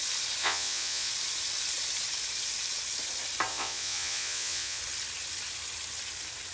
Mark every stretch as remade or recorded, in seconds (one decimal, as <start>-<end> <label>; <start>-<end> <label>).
0.0-0.4 recorded; 0.4-1.1 remade; 1.1-3.5 recorded; 3.5-4.8 remade; 4.8-6.5 recorded